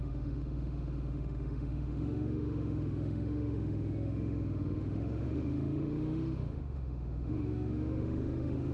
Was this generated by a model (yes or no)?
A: yes